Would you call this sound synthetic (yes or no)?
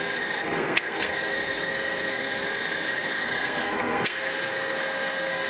yes